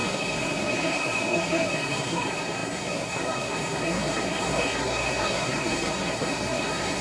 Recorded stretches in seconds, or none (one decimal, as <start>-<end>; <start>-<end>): none